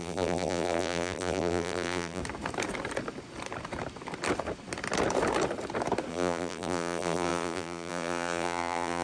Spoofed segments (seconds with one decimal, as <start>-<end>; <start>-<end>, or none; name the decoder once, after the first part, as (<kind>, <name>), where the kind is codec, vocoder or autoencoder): 0.0-2.2 (vocoder, BigVGAN v2); 6.1-9.0